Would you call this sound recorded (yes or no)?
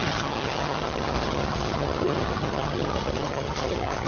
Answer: no